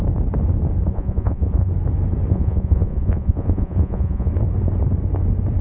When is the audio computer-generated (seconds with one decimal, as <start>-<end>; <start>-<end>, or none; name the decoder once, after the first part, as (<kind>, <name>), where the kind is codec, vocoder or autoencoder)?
0.9-1.7 (vocoder, Vocos); 2.3-4.3

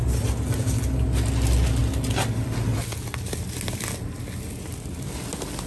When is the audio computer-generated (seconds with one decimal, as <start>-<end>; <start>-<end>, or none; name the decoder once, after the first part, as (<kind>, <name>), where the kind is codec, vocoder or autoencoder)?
none

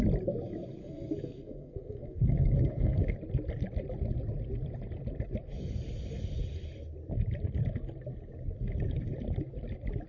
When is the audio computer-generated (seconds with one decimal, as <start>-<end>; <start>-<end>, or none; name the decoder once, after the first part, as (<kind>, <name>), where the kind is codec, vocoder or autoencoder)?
0.8-3.0 (codec, SNAC)

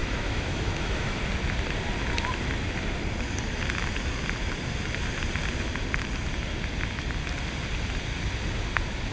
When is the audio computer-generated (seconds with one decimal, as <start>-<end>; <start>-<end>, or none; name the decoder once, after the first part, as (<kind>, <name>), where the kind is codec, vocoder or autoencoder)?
0.0-1.2 (autoencoder, DAC-VAE)

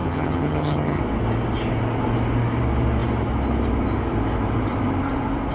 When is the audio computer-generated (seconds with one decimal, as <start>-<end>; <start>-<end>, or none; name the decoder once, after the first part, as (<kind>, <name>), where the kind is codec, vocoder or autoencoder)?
0.0-1.0 (vocoder, HiFi-GAN)

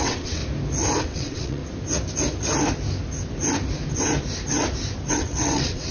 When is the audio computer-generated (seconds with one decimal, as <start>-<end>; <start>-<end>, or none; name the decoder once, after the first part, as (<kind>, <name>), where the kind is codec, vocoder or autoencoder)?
0.0-0.4 (vocoder, WaveNeXt); 1.0-1.6; 5.1-5.9

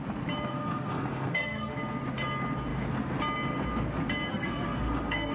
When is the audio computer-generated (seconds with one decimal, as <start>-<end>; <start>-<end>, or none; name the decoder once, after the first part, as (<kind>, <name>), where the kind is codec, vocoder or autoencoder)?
0.5-1.7 (codec, SNAC); 4.3-5.3